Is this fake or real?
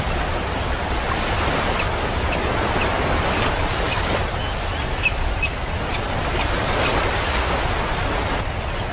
real